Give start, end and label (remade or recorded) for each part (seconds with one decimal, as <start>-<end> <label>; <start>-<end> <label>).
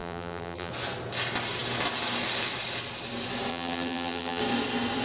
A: 0.0-0.7 remade; 0.7-3.5 recorded; 3.5-4.4 remade; 4.4-5.0 recorded